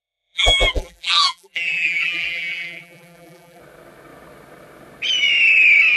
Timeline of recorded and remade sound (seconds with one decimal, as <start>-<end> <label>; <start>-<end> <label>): 0.0-3.6 remade; 3.6-6.0 recorded